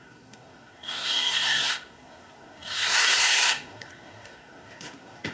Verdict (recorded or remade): remade